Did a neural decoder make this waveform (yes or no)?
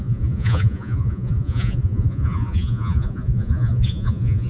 yes